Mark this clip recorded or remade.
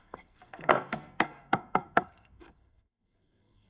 remade